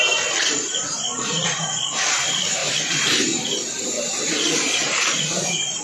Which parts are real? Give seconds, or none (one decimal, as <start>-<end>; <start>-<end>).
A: 0.0-1.1; 1.7-2.6; 3.9-5.8